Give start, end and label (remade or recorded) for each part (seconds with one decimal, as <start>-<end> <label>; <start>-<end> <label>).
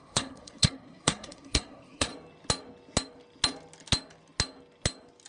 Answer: 0.0-2.1 remade; 2.1-5.3 recorded